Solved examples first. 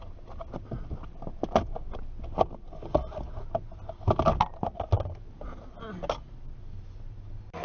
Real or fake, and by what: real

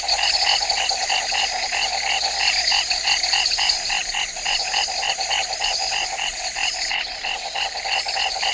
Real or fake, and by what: real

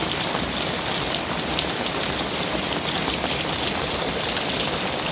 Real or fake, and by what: fake, vocoder, BigVGAN v2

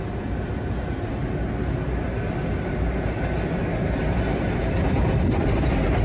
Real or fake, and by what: real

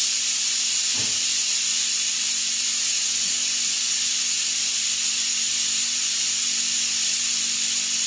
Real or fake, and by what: real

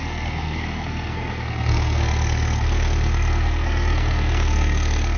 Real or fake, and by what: fake, codec, SNAC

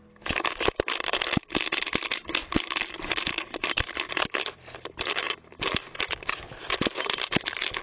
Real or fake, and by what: real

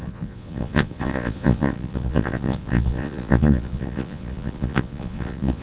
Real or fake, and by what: fake, vocoder, Vocos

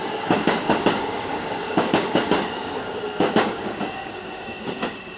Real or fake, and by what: fake, codec, DAC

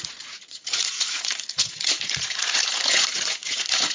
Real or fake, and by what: fake, vocoder, Vocos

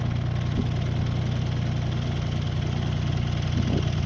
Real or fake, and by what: real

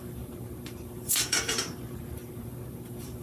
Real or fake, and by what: fake, vocoder, BigVGAN v2